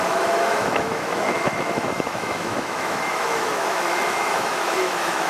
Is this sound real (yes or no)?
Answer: no